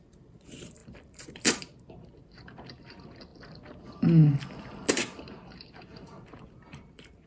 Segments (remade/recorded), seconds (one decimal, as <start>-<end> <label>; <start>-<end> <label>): 0.0-3.3 remade; 3.3-4.9 recorded; 4.9-7.3 remade